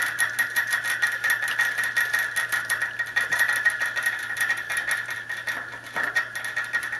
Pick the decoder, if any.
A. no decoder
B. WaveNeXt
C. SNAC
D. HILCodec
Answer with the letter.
A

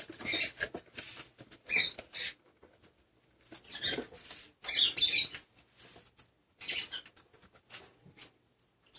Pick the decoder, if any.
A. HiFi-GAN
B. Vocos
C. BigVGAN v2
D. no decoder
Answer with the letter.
D